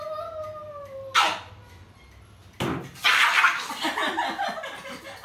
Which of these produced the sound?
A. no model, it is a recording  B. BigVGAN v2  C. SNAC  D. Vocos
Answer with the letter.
A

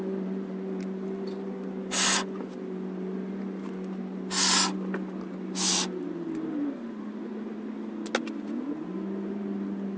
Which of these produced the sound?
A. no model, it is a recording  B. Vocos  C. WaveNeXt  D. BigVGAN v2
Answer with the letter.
A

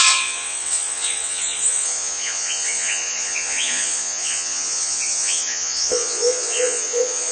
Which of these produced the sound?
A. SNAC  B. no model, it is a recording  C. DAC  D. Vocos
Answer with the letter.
D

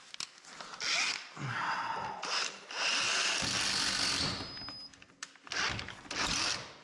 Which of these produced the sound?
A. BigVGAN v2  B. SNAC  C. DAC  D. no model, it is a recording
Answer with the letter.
D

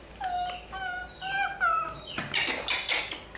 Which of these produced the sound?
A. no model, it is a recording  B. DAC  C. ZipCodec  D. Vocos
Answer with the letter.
A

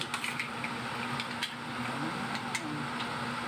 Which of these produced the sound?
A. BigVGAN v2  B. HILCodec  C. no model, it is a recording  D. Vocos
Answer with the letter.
C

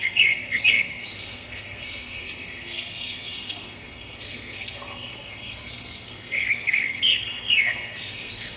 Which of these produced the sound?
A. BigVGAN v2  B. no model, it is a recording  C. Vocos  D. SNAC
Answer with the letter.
D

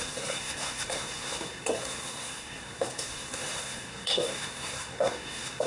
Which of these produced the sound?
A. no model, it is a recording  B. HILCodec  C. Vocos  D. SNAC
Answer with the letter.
D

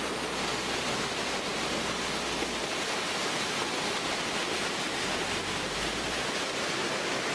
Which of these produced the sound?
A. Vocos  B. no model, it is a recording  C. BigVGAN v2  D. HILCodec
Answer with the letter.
B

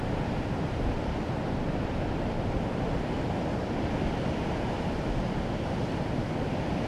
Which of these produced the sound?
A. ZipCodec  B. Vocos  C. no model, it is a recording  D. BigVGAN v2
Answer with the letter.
C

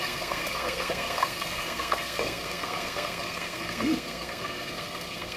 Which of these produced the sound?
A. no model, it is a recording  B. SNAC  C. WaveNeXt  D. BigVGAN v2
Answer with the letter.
B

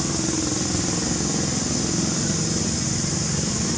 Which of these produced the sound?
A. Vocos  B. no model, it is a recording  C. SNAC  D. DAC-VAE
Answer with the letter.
B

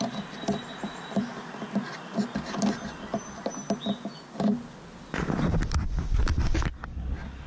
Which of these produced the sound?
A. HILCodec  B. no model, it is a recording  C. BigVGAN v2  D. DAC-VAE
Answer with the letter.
B